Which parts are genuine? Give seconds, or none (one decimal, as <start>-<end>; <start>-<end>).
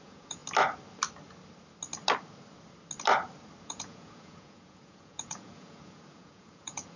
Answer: 0.4-3.6